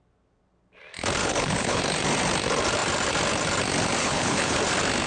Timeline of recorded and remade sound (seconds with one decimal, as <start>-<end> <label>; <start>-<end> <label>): 0.0-1.2 recorded; 1.2-1.8 remade; 1.8-4.0 recorded; 4.0-4.6 remade; 4.6-5.1 recorded